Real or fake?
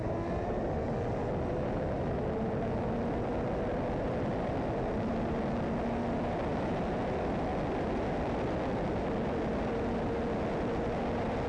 real